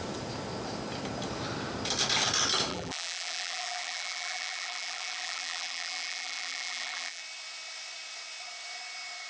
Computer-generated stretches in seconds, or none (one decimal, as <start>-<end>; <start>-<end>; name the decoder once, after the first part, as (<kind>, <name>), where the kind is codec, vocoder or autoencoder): 2.7-7.2 (vocoder, BigVGAN v2)